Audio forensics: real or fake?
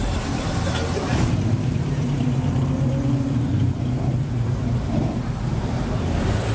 fake